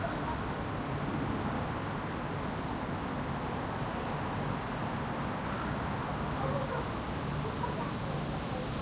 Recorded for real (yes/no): yes